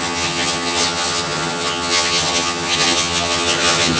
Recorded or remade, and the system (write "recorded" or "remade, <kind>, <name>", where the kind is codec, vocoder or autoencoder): remade, vocoder, HiFi-GAN